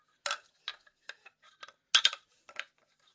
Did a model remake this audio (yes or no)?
no